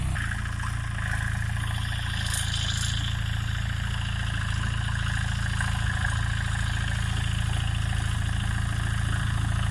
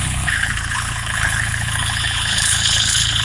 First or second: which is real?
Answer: first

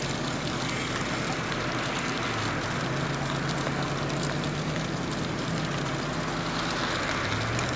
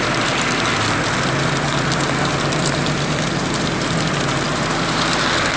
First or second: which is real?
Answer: first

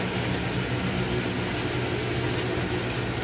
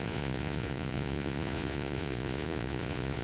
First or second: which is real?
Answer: first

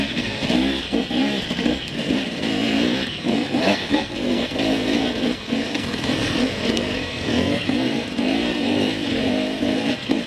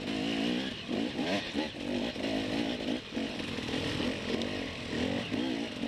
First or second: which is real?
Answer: second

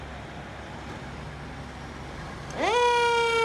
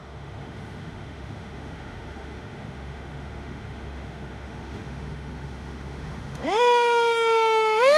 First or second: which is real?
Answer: first